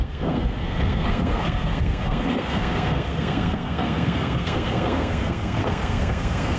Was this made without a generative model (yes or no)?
no